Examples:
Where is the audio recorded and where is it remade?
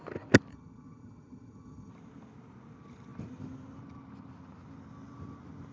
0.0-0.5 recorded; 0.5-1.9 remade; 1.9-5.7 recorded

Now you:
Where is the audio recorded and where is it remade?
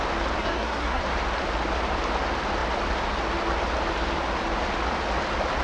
0.0-0.4 recorded; 0.4-1.0 remade; 1.0-5.6 recorded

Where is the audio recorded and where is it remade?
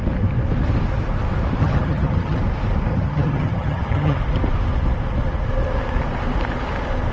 0.0-1.6 recorded; 1.6-2.4 remade; 2.4-2.9 recorded; 2.9-4.2 remade; 4.2-7.1 recorded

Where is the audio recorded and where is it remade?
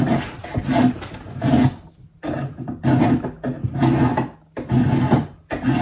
0.0-5.8 recorded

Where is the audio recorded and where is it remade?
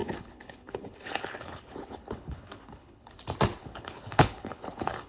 0.0-3.1 remade; 3.1-3.6 recorded; 3.6-5.1 remade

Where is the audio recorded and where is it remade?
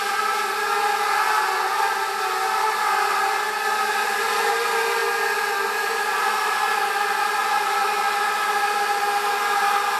0.0-10.0 recorded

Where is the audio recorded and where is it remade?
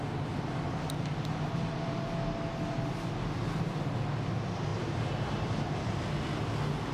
0.0-4.7 recorded; 4.7-6.0 remade; 6.0-6.9 recorded